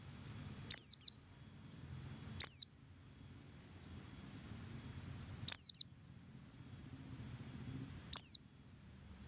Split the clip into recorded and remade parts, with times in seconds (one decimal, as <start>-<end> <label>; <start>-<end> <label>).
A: 0.0-6.8 recorded; 6.8-9.3 remade